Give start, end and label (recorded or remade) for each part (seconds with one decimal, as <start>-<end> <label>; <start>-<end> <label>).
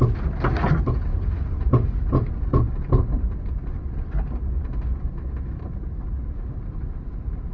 0.0-7.5 recorded